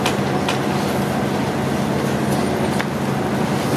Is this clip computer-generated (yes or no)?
no